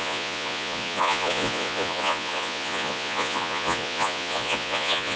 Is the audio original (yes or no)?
no